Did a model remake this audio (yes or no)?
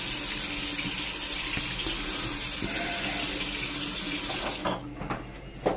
no